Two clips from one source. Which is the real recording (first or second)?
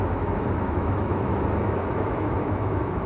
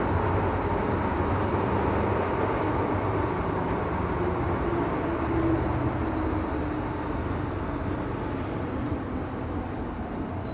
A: second